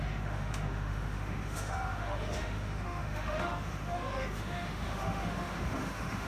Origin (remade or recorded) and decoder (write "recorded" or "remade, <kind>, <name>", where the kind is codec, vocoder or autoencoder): remade, autoencoder, DAC-VAE